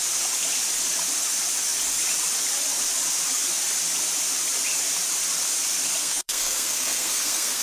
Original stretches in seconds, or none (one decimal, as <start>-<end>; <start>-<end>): 0.0-6.0